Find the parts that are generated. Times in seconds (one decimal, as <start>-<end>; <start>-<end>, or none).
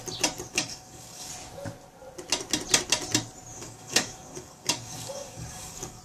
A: 0.5-1.3; 3.5-6.0